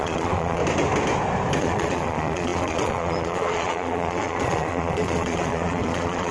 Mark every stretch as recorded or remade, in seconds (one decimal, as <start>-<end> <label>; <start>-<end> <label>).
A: 0.0-0.6 remade; 0.6-1.6 recorded; 1.6-6.3 remade